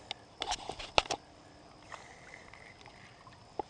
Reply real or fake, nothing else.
real